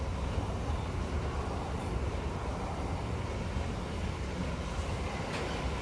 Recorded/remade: recorded